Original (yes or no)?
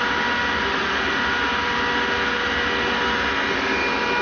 yes